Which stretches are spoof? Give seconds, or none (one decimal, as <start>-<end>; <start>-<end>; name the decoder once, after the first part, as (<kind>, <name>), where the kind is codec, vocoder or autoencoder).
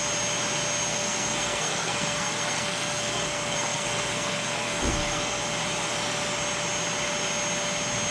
0.9-5.4 (codec, SNAC)